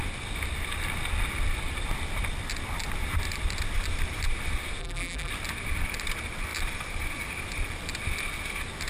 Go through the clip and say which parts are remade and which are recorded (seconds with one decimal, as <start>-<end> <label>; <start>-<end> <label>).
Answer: 0.0-4.8 recorded; 4.8-5.3 remade; 5.3-8.9 recorded